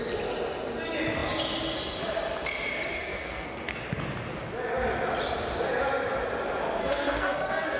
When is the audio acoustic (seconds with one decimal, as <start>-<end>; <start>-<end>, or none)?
0.0-3.0; 3.8-6.8